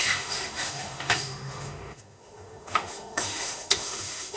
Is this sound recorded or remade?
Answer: remade